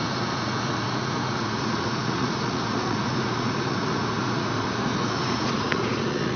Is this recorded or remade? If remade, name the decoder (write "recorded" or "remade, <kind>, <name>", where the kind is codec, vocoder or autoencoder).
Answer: remade, vocoder, Vocos